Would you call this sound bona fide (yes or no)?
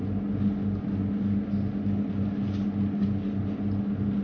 yes